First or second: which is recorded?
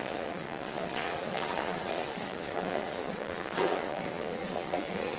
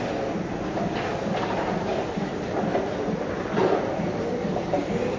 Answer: second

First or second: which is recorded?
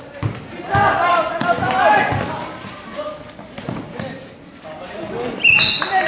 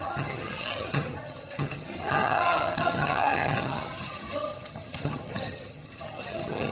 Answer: first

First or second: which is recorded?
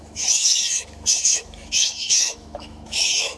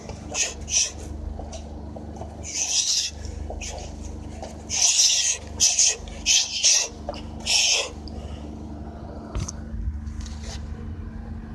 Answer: second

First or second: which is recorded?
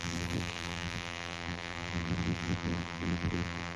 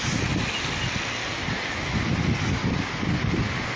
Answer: second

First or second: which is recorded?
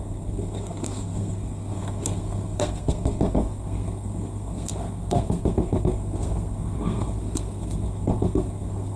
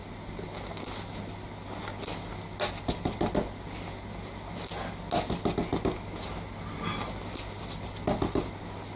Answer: second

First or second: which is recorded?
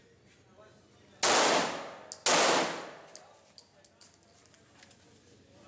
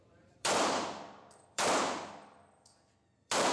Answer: first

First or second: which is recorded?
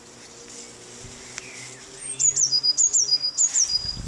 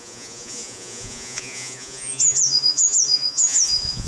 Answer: first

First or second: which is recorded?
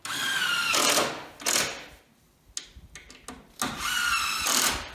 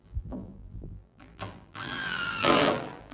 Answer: first